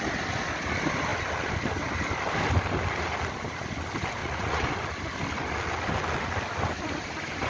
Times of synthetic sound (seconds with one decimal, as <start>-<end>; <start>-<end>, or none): 4.2-4.7